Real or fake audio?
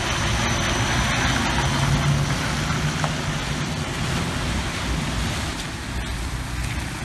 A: real